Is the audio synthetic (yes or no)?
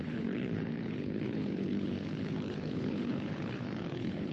yes